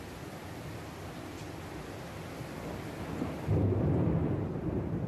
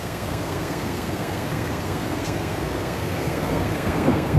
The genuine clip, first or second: first